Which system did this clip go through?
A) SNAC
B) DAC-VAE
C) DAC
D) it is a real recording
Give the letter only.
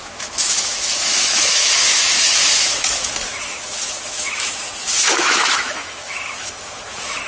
B